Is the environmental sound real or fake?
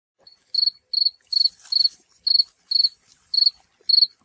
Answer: real